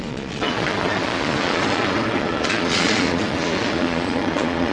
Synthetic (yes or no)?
yes